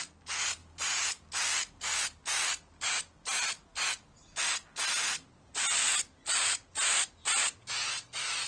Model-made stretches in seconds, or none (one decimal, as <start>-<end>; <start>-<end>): 0.6-1.3; 7.2-7.8

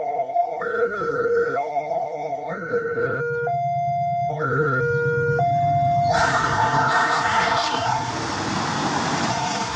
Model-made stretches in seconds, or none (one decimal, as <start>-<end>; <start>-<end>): 0.0-3.2; 4.3-4.8; 6.1-8.1; 9.3-9.8

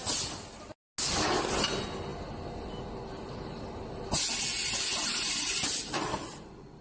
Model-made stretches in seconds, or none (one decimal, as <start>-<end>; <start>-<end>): none

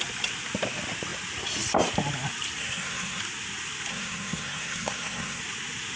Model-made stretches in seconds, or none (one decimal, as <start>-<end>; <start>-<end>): 2.6-3.2; 3.9-5.4

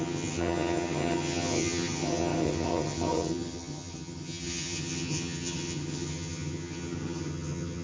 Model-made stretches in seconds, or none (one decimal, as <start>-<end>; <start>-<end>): 0.0-7.8

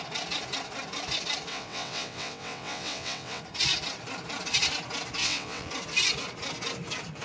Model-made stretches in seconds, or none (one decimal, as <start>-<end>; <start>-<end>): 1.5-3.4; 5.2-5.7

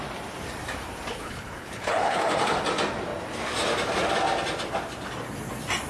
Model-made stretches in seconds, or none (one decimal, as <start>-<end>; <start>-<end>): 1.1-2.6